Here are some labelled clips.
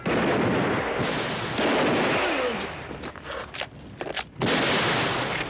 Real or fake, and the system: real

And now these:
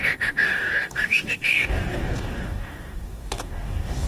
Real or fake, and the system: fake, codec, DAC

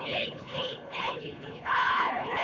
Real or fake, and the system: fake, codec, HILCodec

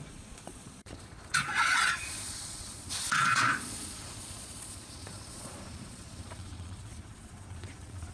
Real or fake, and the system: fake, vocoder, Vocos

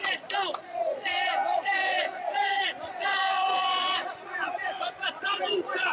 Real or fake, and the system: fake, vocoder, Vocos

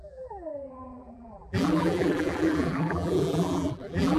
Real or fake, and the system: fake, vocoder, BigVGAN v2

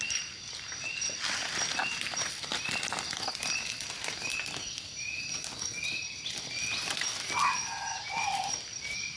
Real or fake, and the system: real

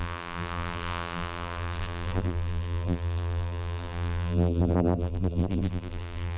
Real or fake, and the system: fake, vocoder, BigVGAN v2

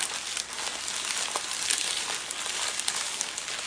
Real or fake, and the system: real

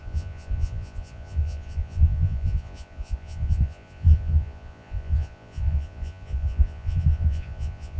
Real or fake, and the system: fake, vocoder, Vocos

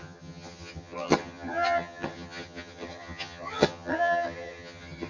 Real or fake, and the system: fake, vocoder, HiFi-GAN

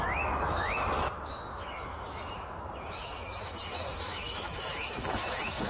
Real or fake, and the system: fake, autoencoder, DAC-VAE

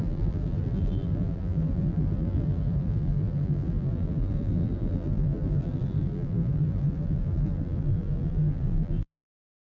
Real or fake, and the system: fake, vocoder, BigVGAN v2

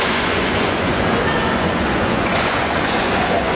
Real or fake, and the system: fake, vocoder, Vocos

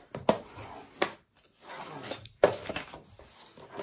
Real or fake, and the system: real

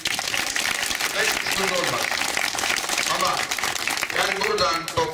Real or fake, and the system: real